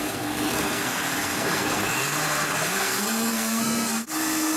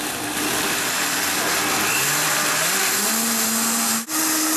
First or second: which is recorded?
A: second